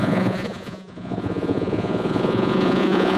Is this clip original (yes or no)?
no